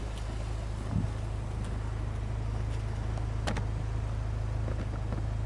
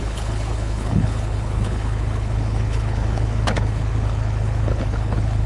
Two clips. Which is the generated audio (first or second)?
second